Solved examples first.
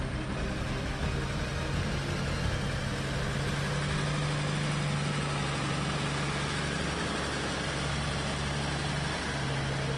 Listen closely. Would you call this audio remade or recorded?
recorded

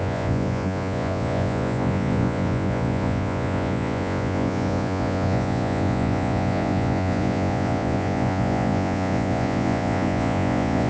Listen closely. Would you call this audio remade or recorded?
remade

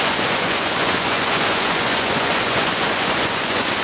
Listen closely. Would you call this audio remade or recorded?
remade